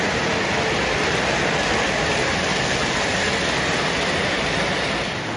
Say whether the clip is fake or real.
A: real